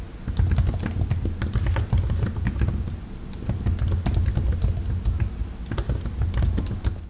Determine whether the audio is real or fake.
real